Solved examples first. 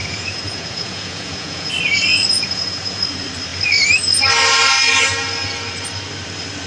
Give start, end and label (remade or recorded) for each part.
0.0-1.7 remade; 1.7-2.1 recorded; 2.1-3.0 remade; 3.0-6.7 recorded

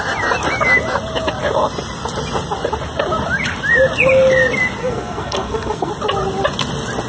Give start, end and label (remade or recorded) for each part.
0.0-4.8 recorded; 4.8-5.9 remade; 5.9-7.1 recorded